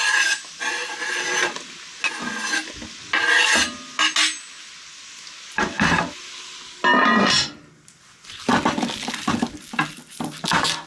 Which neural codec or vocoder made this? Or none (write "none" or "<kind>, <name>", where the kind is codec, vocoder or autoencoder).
none